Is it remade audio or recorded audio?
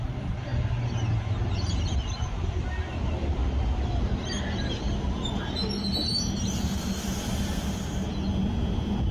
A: recorded